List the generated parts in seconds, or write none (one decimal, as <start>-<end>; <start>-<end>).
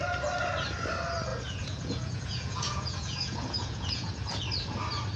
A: 1.3-4.4